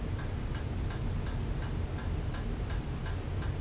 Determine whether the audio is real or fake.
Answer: real